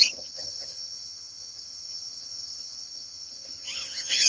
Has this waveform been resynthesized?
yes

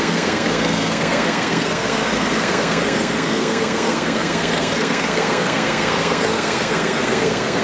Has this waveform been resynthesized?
yes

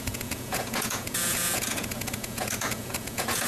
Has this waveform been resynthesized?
yes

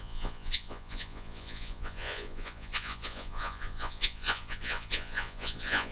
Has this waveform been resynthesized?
yes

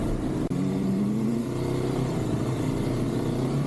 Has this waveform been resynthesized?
no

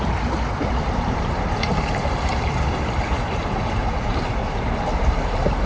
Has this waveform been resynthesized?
yes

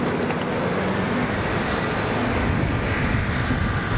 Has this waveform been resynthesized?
no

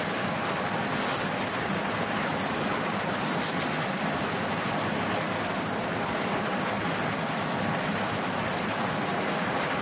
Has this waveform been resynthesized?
no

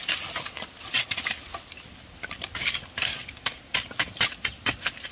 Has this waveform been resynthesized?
no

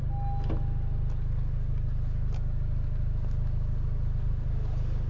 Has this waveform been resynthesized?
no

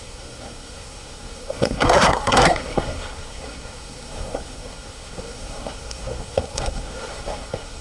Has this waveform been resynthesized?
yes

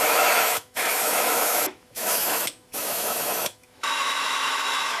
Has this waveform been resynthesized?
yes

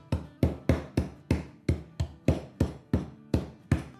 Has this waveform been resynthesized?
no